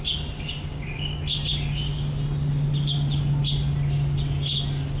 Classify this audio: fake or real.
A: real